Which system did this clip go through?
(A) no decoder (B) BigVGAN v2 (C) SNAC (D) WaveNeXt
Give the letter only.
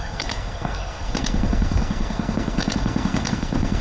C